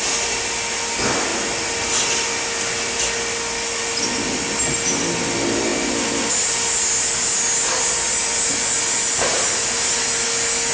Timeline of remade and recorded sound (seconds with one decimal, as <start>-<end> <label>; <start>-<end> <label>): 0.0-10.7 recorded